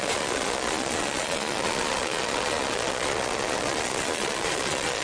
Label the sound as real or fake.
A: fake